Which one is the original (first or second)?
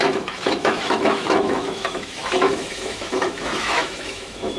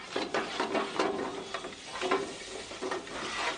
second